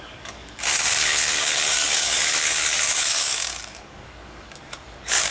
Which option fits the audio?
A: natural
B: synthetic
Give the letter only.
B